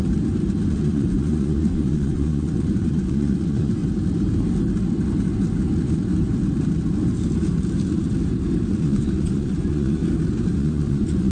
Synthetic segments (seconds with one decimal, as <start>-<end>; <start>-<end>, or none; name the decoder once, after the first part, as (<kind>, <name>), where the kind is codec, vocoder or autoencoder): 0.7-3.8 (vocoder, Vocos); 8.8-10.0; 10.5-11.3